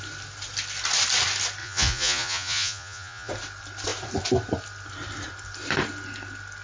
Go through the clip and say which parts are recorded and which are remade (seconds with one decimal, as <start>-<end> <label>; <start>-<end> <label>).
0.0-1.6 recorded; 1.6-3.3 remade; 3.3-6.6 recorded